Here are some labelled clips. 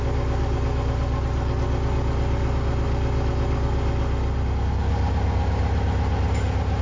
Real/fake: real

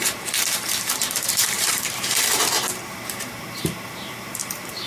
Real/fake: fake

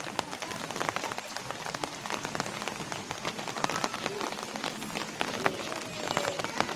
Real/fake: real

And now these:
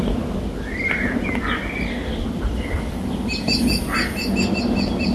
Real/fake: real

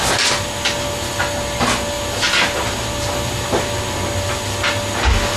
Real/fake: real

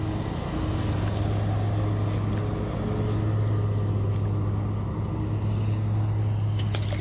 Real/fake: real